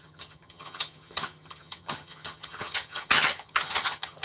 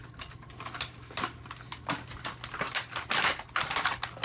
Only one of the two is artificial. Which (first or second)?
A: first